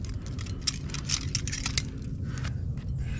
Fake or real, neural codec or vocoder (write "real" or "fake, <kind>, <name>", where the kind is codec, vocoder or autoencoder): real